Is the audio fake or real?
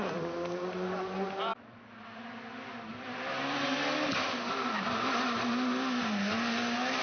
real